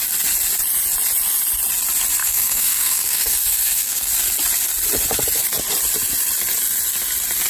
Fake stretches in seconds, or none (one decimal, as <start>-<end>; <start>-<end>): 2.2-4.1